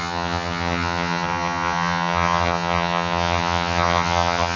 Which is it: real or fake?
fake